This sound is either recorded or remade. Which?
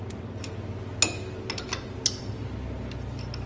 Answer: recorded